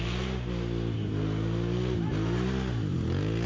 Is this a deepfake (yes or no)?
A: no